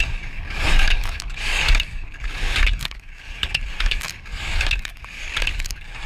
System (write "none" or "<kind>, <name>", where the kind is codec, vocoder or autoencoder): codec, DAC